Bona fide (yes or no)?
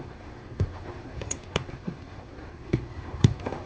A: no